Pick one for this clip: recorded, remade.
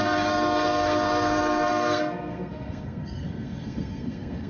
remade